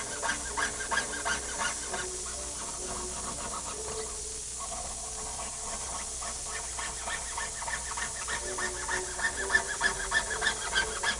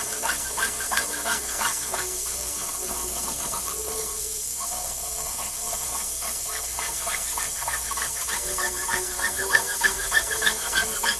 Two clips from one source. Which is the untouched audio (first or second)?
first